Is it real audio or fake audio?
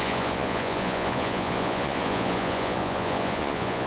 fake